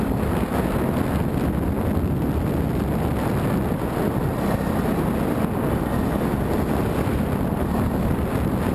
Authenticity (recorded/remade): recorded